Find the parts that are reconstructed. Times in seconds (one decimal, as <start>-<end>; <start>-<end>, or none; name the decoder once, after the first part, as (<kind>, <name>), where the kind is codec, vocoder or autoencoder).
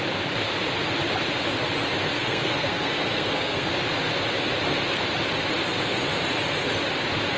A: 2.1-3.7 (codec, SNAC)